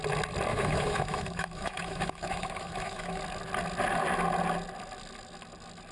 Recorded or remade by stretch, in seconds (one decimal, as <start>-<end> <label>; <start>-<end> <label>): 0.0-0.5 recorded; 0.5-3.2 remade; 3.2-5.9 recorded